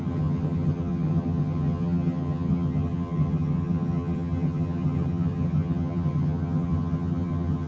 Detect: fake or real fake